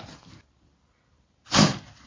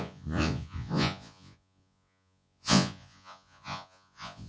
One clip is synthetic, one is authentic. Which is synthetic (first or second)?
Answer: second